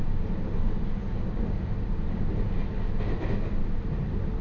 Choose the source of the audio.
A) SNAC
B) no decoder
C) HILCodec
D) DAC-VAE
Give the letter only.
B